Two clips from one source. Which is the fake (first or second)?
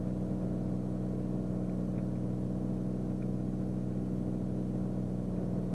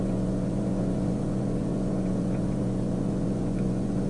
second